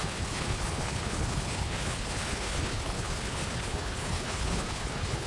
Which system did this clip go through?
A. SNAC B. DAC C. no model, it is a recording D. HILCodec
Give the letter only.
D